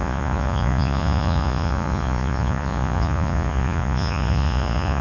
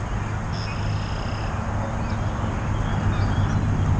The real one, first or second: second